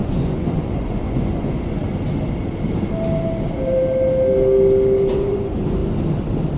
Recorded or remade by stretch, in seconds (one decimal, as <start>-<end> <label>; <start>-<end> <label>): 0.0-1.8 remade; 1.8-5.1 recorded; 5.1-5.8 remade; 5.8-6.6 recorded